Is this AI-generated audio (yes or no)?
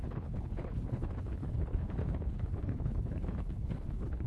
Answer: yes